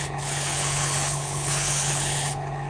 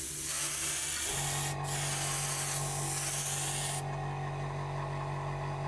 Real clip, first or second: second